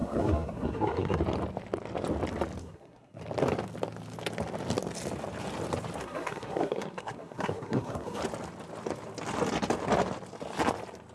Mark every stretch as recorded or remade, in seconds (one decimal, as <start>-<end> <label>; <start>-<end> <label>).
0.0-1.2 remade; 1.2-2.6 recorded; 2.6-3.2 remade; 3.2-6.0 recorded; 6.0-8.2 remade; 8.2-11.1 recorded